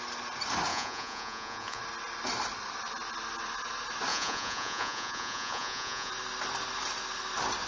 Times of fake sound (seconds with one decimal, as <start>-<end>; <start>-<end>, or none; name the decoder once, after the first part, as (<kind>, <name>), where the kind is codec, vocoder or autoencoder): 0.7-1.8 (vocoder, Vocos); 4.1-6.1